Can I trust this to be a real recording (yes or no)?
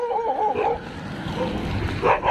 yes